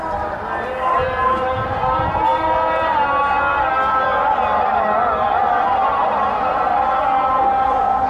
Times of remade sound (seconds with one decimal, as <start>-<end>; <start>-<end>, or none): none